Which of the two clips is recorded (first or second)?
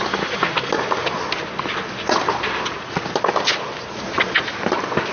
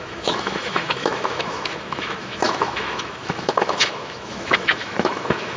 first